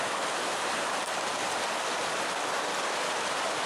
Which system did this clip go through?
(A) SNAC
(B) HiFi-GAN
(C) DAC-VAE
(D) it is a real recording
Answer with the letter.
D